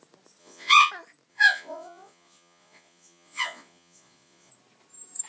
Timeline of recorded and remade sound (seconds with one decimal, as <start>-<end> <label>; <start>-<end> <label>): 0.0-0.4 recorded; 0.4-0.9 remade; 0.9-1.3 recorded; 1.3-4.5 remade; 4.5-5.3 recorded